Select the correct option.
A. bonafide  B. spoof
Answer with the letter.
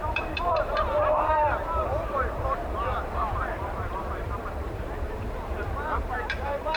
B